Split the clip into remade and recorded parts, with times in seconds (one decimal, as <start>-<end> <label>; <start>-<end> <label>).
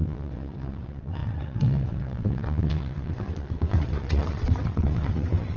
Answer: 0.0-5.6 remade